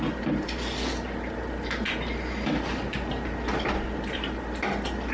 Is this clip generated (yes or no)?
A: no